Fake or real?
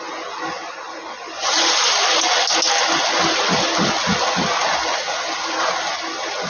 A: real